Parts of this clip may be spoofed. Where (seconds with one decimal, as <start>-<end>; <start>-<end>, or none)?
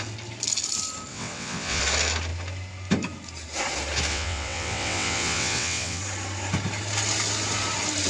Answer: 1.1-1.8; 4.1-6.0